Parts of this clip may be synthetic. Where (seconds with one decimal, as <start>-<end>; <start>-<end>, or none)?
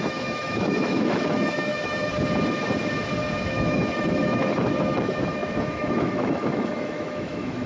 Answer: 0.0-2.1; 3.4-7.7